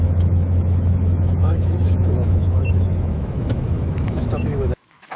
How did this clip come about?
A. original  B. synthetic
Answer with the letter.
B